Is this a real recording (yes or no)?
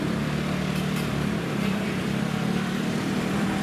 no